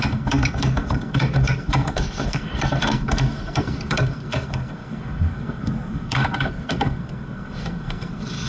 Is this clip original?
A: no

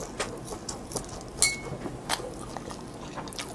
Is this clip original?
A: yes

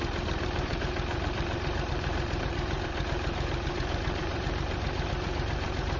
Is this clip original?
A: no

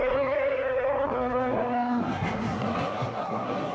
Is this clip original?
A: no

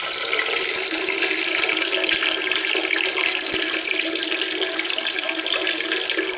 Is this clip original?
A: yes